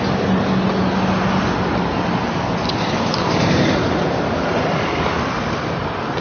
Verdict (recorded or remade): recorded